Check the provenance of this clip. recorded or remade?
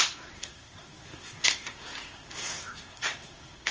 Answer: remade